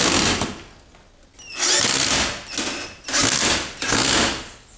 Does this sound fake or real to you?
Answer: real